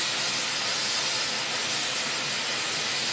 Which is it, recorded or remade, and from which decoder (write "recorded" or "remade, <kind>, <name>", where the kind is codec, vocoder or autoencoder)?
recorded